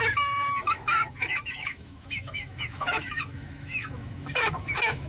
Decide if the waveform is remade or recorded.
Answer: remade